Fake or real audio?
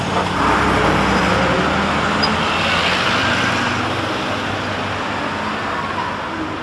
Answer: real